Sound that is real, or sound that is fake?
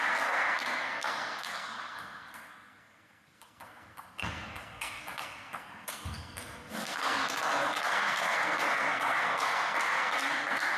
fake